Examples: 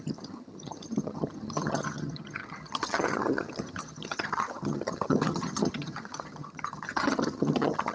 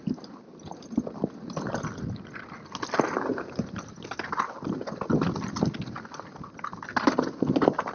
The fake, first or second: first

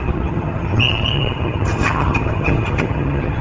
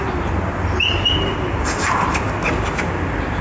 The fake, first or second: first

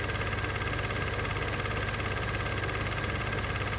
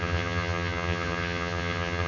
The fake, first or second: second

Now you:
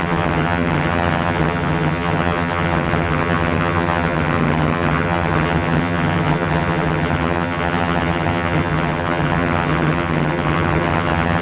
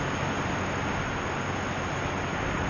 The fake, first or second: first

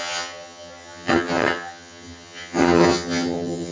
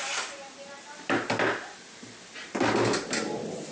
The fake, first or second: first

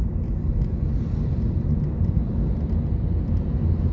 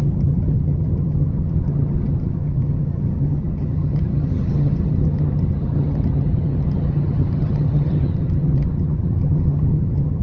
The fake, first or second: second